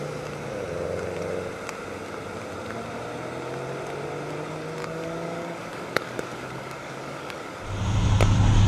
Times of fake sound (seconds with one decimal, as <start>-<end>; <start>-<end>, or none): 4.8-7.6